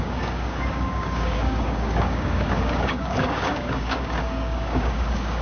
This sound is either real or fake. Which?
fake